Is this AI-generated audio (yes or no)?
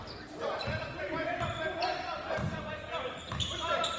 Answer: no